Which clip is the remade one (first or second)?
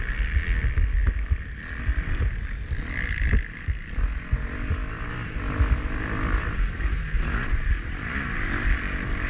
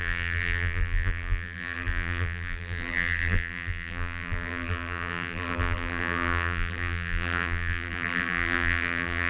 second